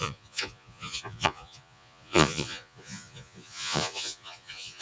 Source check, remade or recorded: remade